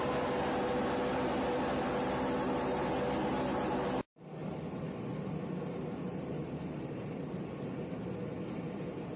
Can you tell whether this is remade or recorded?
recorded